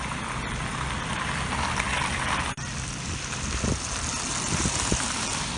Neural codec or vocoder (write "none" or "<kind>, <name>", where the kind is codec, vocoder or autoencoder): vocoder, BigVGAN v2